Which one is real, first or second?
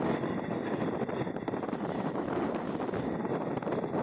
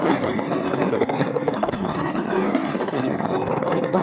first